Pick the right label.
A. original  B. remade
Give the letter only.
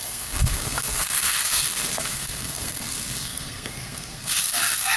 B